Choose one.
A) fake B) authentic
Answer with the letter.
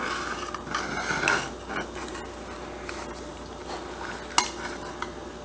B